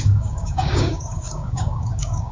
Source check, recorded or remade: remade